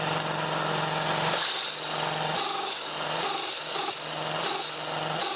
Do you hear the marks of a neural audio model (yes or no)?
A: no